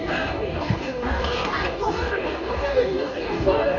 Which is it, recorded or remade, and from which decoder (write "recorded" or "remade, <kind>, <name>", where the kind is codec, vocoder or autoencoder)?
remade, codec, DAC